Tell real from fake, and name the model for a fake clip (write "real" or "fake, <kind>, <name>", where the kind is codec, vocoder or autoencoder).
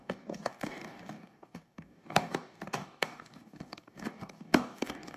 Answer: fake, codec, DAC